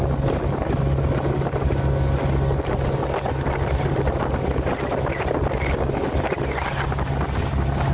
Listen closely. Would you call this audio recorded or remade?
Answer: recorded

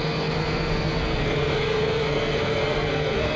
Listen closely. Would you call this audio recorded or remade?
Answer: remade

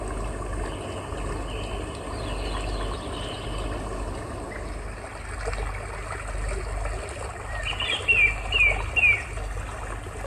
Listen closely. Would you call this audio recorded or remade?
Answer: recorded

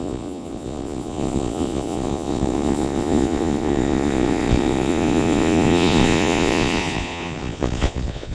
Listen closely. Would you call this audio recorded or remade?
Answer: remade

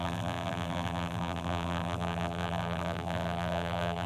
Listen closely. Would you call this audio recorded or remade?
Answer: remade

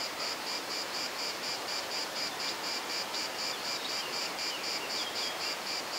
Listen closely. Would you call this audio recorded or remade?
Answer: remade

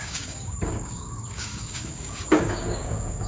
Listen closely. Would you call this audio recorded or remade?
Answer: remade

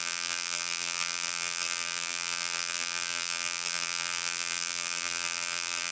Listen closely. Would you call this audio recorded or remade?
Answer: remade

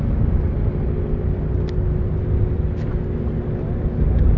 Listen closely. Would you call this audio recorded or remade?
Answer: recorded